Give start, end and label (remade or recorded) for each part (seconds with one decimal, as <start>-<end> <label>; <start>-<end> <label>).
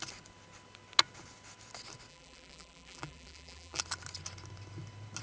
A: 0.0-2.1 recorded; 2.1-3.8 remade; 3.8-5.2 recorded